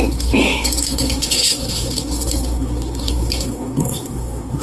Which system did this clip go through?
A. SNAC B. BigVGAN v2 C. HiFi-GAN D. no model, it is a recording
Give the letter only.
A